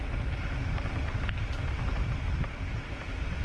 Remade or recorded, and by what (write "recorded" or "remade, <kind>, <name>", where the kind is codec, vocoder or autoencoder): recorded